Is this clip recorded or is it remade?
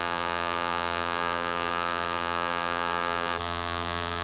remade